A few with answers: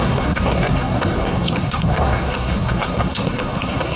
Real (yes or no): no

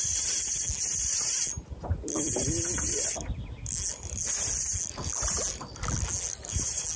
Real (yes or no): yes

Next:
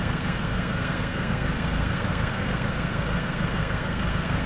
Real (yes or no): no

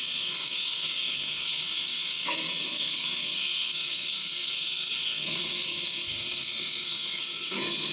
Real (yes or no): no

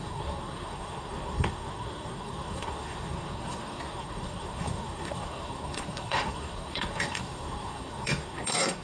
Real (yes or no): no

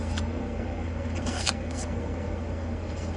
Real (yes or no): no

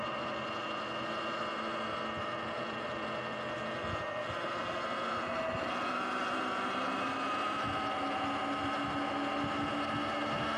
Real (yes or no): yes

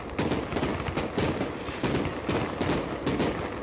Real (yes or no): yes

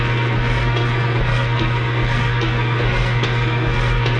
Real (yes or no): no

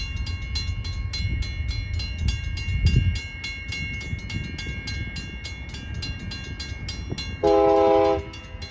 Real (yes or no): yes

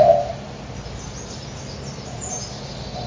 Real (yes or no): yes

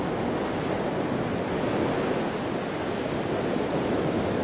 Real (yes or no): yes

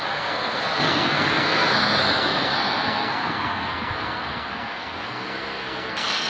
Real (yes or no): no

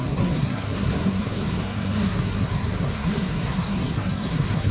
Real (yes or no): no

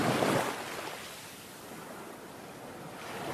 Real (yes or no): yes